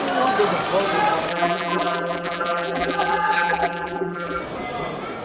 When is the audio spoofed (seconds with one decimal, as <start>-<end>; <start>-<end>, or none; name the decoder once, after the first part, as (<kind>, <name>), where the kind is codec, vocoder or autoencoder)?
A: 1.3-4.4 (vocoder, BigVGAN v2)